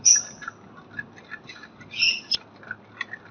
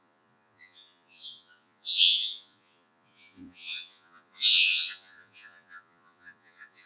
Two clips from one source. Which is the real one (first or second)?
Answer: first